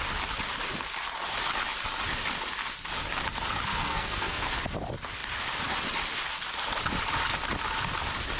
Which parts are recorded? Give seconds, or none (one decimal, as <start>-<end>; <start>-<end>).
0.0-3.7; 4.6-8.4